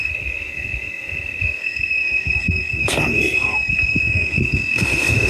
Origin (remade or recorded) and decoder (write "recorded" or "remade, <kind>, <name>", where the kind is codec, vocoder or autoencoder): remade, codec, SNAC